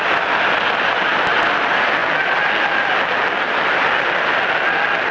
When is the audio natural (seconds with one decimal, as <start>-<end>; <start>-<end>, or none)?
0.0-5.1